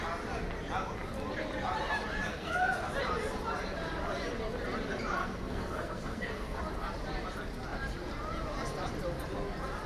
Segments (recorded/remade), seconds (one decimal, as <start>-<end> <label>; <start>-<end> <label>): 0.0-2.3 recorded; 2.3-2.9 remade; 2.9-5.2 recorded; 5.2-6.6 remade; 6.6-9.9 recorded